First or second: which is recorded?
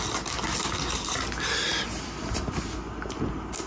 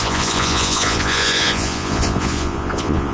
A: first